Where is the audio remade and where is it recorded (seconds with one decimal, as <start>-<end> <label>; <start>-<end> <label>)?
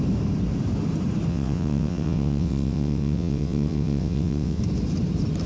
0.0-1.3 recorded; 1.3-4.6 remade; 4.6-5.5 recorded